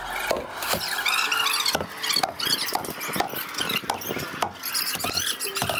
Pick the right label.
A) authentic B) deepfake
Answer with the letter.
A